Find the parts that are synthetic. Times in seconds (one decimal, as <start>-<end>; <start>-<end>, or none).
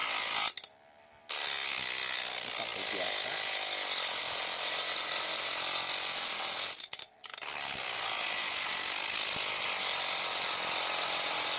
none